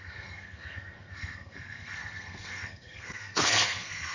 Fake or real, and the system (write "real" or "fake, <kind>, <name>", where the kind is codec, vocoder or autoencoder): fake, codec, SNAC